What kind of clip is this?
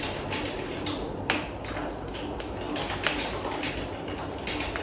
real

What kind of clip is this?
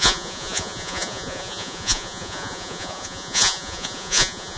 fake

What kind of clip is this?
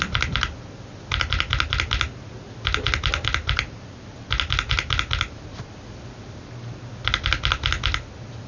real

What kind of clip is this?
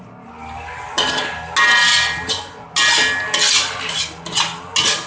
real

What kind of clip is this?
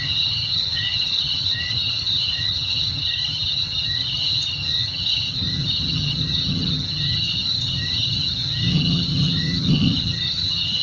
fake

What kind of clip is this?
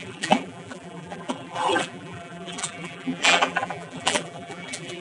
fake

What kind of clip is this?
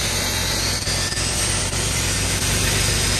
fake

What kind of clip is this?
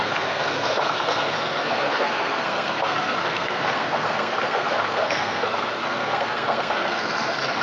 fake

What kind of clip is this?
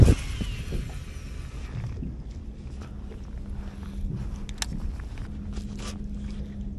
real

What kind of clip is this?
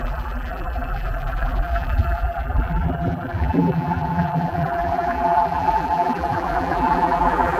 fake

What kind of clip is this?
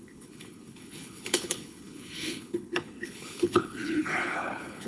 fake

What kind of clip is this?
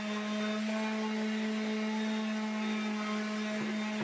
real